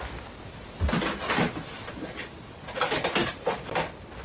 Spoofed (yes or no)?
no